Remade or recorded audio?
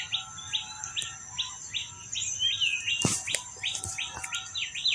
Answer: recorded